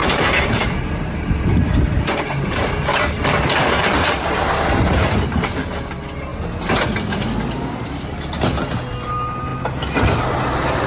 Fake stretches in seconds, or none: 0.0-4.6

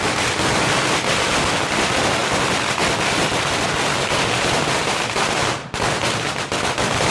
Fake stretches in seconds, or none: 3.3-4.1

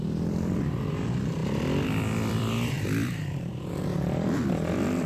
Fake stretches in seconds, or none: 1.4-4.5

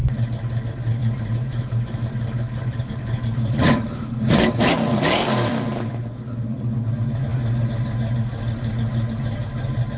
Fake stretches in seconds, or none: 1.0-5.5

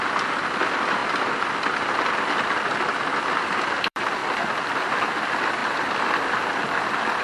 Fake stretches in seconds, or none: 0.0-4.2; 5.1-7.2

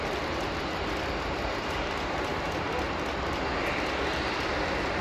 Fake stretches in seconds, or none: 0.0-2.3

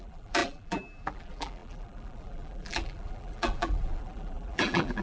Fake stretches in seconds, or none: 0.0-5.0